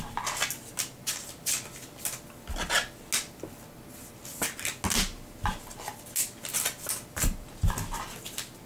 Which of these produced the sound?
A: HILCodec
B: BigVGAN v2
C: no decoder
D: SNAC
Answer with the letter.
C